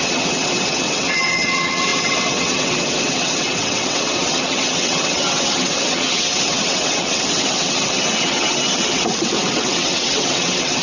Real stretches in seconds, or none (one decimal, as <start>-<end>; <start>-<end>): none